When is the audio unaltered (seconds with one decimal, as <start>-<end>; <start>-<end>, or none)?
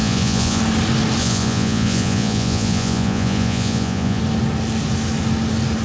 0.6-1.2; 4.2-5.8